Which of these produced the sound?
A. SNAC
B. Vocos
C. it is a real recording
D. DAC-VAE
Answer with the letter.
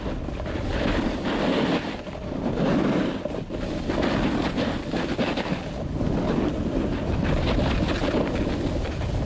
C